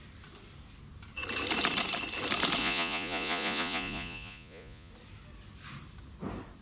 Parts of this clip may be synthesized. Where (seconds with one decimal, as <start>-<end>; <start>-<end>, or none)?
2.6-4.9